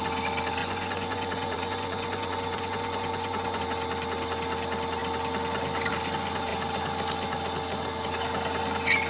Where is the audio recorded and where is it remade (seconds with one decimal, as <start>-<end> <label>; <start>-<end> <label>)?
0.0-0.6 recorded; 0.6-3.6 remade; 3.6-9.1 recorded